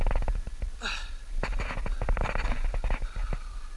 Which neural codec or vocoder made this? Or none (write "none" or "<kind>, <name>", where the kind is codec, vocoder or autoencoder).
none